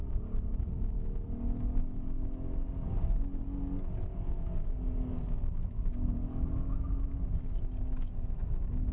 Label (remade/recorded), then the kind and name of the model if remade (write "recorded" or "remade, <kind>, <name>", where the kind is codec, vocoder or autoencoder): recorded